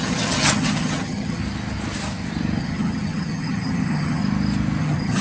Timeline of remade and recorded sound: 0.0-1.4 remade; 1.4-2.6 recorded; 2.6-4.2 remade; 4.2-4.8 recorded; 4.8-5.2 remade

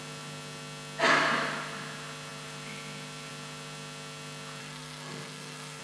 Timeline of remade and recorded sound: 0.0-4.6 recorded; 4.6-5.8 remade

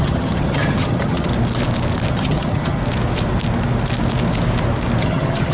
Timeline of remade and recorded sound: 0.0-1.3 remade; 1.3-2.1 recorded; 2.1-2.8 remade; 2.8-5.0 recorded; 5.0-5.5 remade

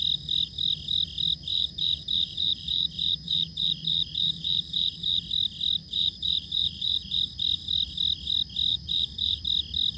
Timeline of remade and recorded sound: 0.0-1.5 recorded; 1.5-5.2 remade; 5.2-5.8 recorded; 5.8-7.2 remade; 7.2-8.7 recorded; 8.7-9.4 remade; 9.4-10.0 recorded

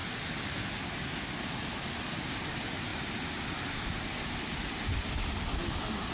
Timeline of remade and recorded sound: 0.0-6.1 recorded